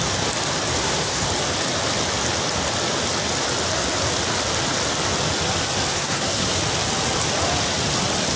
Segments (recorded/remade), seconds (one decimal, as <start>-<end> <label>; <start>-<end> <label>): 0.0-0.8 recorded; 0.8-1.3 remade; 1.3-5.9 recorded; 5.9-6.6 remade; 6.6-8.4 recorded